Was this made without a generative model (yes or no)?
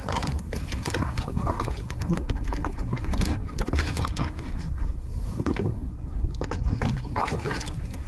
no